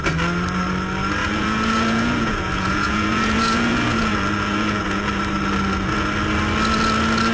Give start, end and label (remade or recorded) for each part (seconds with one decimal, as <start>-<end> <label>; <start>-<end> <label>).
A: 0.0-1.2 recorded; 1.2-5.2 remade; 5.2-7.3 recorded